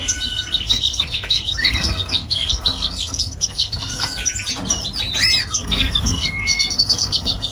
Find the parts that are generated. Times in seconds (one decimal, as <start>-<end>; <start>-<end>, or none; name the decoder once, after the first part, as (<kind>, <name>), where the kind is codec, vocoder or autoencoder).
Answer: 0.0-4.2 (codec, SNAC); 5.4-7.5